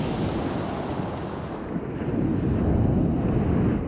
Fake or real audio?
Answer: real